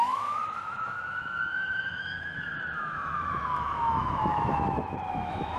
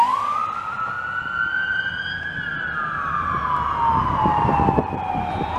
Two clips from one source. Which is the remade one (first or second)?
first